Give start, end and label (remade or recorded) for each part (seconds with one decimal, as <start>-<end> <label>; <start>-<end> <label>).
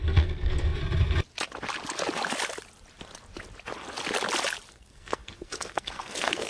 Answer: 0.0-0.8 remade; 0.8-4.7 recorded; 4.7-6.5 remade